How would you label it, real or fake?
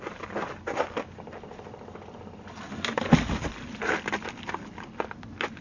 real